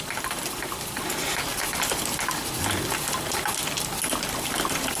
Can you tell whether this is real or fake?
real